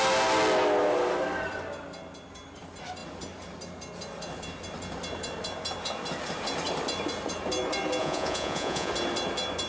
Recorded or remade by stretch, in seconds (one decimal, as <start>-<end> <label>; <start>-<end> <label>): 0.0-8.0 recorded; 8.0-8.9 remade; 8.9-9.7 recorded